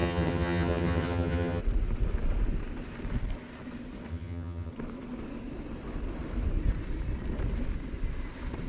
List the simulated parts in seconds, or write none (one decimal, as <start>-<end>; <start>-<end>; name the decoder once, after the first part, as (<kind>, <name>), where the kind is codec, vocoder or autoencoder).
0.0-1.6 (vocoder, HiFi-GAN); 4.1-4.7